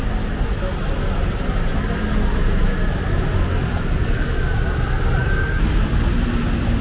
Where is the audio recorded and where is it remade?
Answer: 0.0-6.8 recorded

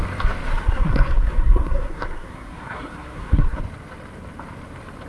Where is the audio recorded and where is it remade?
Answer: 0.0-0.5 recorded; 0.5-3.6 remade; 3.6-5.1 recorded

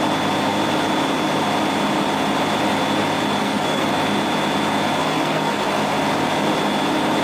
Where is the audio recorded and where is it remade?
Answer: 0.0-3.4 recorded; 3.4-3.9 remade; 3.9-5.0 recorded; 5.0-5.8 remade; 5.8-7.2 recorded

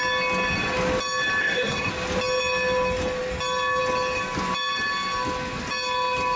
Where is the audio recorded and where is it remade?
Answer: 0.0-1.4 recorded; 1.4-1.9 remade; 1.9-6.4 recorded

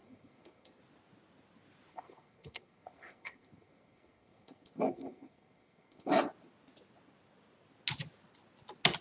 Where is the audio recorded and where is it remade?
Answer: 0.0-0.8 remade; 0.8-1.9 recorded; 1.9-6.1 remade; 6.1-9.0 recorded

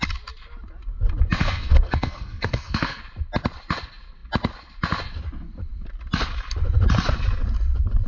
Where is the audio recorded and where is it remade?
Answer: 0.0-1.4 recorded; 1.4-3.0 remade; 3.0-8.1 recorded

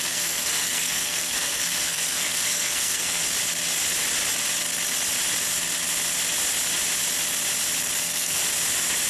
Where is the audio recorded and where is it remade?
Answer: 0.0-3.2 remade; 3.2-8.0 recorded; 8.0-8.4 remade; 8.4-9.1 recorded

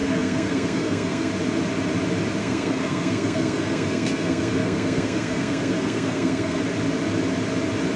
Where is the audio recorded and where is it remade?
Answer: 0.0-1.3 remade; 1.3-2.4 recorded; 2.4-6.6 remade; 6.6-8.0 recorded